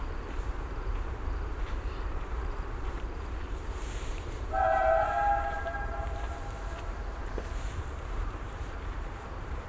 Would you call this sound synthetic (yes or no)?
yes